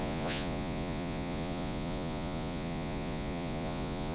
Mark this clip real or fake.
fake